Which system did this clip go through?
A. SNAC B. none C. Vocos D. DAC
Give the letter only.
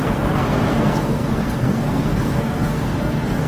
A